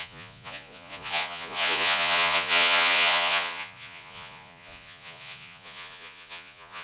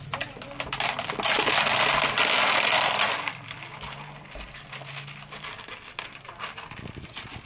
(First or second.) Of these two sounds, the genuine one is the second